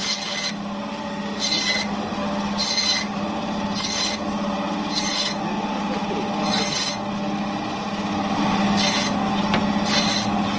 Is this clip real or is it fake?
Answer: real